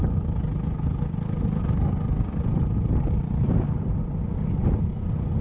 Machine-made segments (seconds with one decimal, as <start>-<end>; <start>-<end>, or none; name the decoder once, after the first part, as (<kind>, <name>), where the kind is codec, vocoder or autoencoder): 2.3-4.0 (vocoder, BigVGAN v2)